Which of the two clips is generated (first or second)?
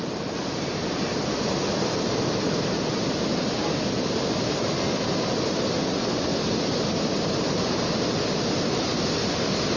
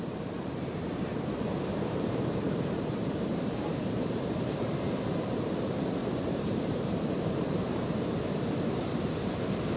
second